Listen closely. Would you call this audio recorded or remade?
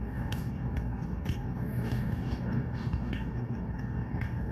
remade